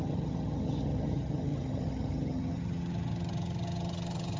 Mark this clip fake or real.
fake